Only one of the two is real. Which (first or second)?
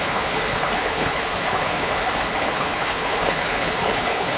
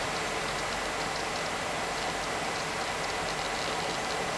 second